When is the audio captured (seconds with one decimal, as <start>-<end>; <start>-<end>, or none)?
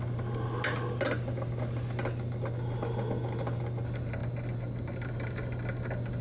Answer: 0.0-6.2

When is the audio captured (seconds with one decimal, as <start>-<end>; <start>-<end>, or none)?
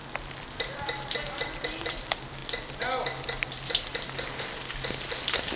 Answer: 0.0-5.6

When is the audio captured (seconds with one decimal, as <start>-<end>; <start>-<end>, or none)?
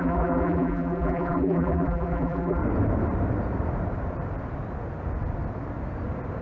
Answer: 2.6-6.4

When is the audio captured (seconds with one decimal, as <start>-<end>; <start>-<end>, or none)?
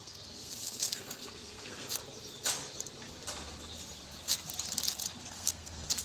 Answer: 2.0-5.3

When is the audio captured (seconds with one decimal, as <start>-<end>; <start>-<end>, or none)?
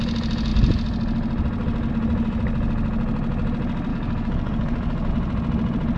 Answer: 0.0-3.9; 5.1-6.0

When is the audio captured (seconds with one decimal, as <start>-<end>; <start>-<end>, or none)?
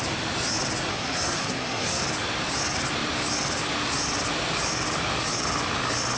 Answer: 0.0-0.9; 2.0-6.2